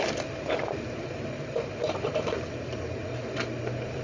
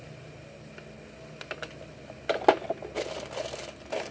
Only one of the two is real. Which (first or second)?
second